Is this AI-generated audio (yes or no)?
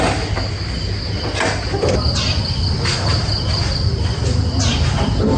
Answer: no